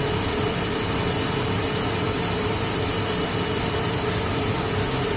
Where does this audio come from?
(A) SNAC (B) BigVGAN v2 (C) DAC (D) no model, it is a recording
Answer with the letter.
D